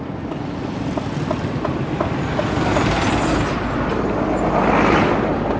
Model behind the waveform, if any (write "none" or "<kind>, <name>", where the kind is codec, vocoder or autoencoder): none